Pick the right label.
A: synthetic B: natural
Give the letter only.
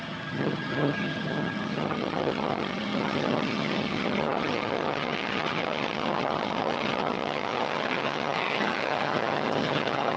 A